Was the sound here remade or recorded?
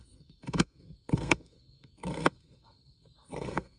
remade